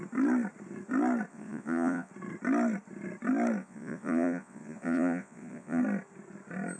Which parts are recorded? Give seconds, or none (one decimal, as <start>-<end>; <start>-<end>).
0.0-1.3; 2.1-3.6; 5.8-6.8